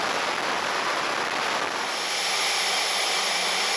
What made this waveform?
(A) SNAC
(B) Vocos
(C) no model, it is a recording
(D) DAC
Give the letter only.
C